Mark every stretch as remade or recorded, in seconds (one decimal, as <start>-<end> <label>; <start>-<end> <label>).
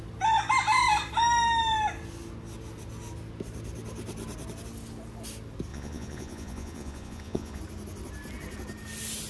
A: 0.0-5.7 recorded; 5.7-7.6 remade; 7.6-9.3 recorded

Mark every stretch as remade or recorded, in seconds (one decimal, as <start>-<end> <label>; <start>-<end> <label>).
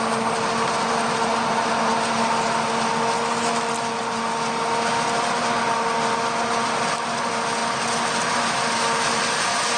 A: 0.0-9.8 recorded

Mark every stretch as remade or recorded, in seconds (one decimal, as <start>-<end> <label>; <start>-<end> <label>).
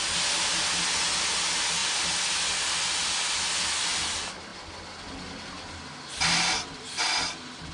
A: 0.0-7.7 recorded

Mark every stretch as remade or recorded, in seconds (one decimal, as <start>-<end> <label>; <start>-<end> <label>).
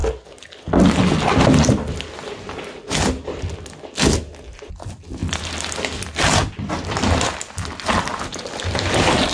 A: 0.0-9.3 recorded